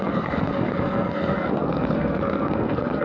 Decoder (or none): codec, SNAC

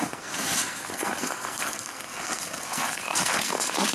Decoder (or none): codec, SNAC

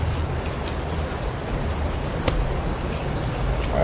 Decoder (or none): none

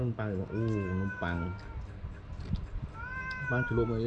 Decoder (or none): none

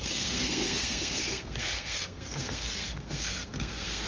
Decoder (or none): codec, SNAC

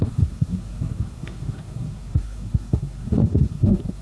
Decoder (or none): codec, SNAC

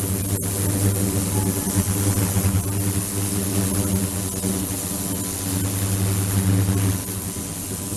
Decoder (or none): none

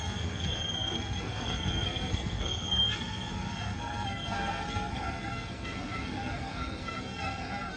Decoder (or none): codec, SNAC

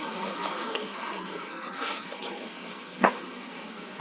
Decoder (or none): codec, SNAC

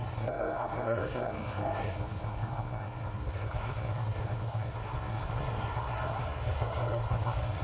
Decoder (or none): codec, SNAC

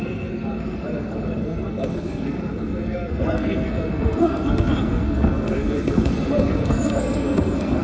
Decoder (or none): codec, SNAC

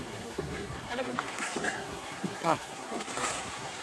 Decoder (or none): codec, SNAC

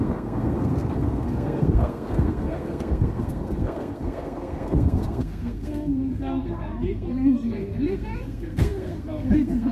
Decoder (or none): codec, SNAC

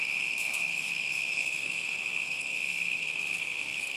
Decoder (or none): codec, SNAC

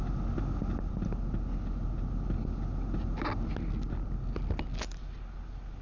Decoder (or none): none